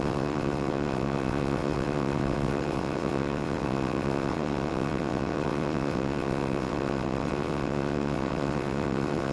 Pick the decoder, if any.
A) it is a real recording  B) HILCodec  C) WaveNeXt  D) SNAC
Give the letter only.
C